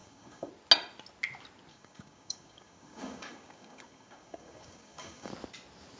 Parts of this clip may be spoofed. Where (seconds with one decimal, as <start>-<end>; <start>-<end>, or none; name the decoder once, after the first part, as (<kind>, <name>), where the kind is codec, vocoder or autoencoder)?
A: 0.0-0.5 (codec, DAC); 1.7-5.3